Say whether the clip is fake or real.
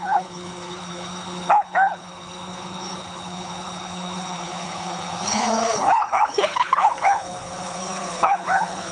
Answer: fake